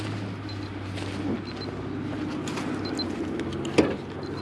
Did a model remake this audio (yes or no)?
no